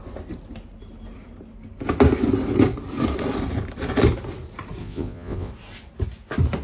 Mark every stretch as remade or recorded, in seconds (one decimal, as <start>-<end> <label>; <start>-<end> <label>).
0.0-4.8 recorded; 4.8-5.5 remade; 5.5-6.6 recorded